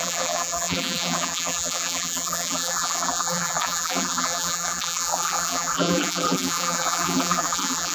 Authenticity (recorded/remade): remade